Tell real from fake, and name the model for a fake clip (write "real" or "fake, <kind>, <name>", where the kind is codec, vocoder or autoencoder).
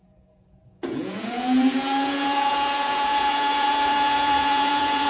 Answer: fake, vocoder, Vocos